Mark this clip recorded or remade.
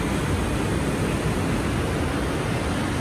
recorded